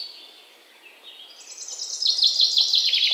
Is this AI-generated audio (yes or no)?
no